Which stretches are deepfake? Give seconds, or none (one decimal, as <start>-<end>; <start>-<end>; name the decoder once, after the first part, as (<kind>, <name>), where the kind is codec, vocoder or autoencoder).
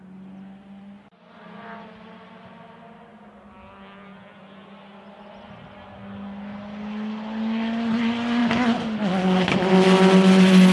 none